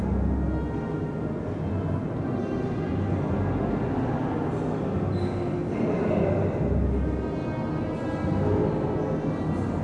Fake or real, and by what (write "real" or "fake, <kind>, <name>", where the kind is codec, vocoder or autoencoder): real